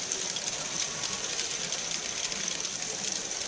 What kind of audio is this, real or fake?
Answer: real